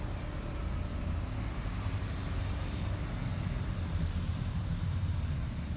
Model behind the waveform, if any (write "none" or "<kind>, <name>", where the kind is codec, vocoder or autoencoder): none